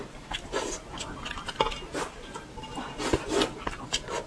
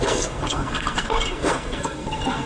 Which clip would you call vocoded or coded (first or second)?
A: second